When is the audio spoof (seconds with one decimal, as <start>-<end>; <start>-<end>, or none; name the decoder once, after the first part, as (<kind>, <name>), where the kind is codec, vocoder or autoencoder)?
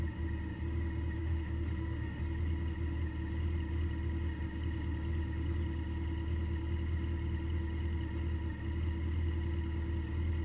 1.2-2.2 (autoencoder, DAC-VAE)